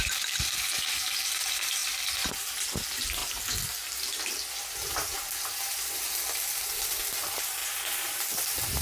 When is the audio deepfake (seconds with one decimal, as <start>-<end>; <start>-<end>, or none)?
none